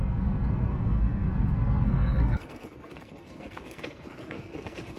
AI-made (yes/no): yes